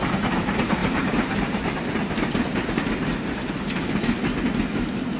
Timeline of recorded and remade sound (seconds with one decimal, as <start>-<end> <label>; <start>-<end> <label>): 0.0-0.8 recorded; 0.8-3.9 remade; 3.9-5.2 recorded